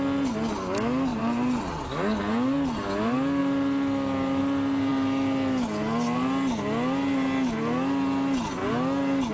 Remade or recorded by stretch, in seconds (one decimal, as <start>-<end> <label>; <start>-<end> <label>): 0.0-1.1 recorded; 1.1-1.6 remade; 1.6-9.3 recorded